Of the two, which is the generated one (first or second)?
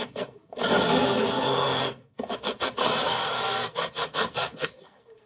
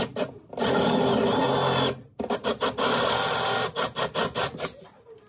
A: first